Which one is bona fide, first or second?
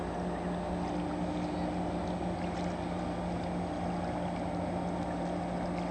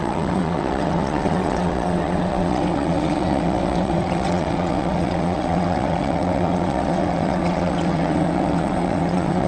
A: first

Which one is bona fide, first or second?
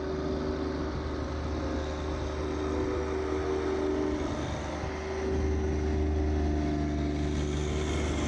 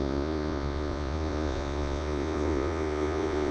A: first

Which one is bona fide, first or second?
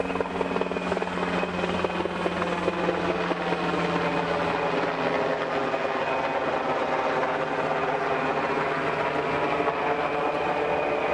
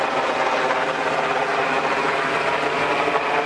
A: first